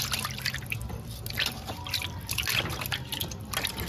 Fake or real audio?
real